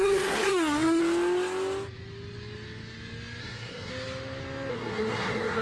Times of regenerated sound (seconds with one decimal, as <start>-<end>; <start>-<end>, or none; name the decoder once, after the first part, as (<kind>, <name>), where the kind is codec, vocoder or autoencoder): 0.0-1.0 (codec, SNAC); 3.4-3.9; 4.7-5.6